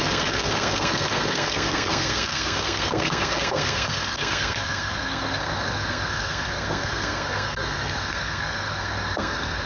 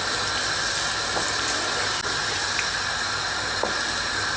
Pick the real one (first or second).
second